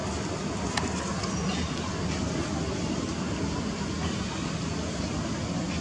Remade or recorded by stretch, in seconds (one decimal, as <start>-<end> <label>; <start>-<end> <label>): 0.0-5.8 recorded